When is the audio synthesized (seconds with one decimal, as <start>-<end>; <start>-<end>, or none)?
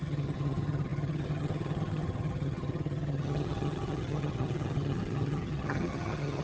0.0-6.4